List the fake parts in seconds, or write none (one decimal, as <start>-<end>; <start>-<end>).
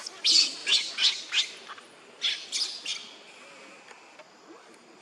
none